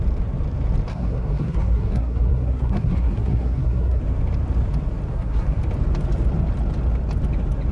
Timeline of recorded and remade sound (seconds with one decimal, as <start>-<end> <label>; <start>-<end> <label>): 0.0-0.9 recorded; 0.9-4.0 remade; 4.0-5.1 recorded; 5.1-5.6 remade; 5.6-7.7 recorded

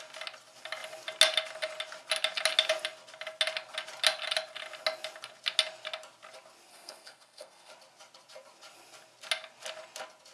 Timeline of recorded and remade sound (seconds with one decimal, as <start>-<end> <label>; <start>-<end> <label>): 0.0-6.7 recorded; 6.7-7.7 remade; 7.7-10.3 recorded

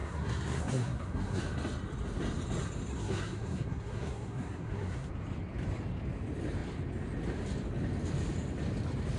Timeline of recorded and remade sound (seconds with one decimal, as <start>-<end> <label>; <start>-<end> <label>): 0.0-1.4 remade; 1.4-2.9 recorded; 2.9-5.1 remade; 5.1-9.2 recorded

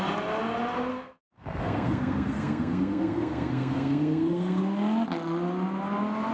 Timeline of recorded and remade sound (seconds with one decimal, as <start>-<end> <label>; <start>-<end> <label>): 0.0-0.9 recorded; 0.9-4.6 remade; 4.6-6.3 recorded

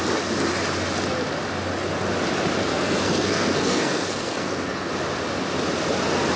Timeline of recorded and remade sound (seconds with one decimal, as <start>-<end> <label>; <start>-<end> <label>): 0.0-2.7 recorded; 2.7-4.9 remade; 4.9-6.4 recorded